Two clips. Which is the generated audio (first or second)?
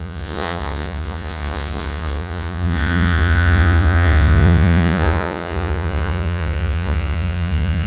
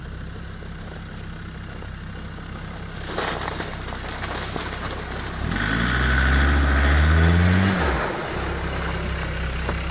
first